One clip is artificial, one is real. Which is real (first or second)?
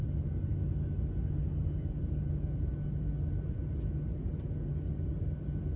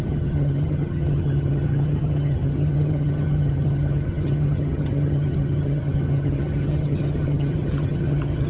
first